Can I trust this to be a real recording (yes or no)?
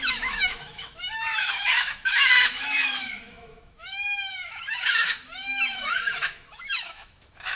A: no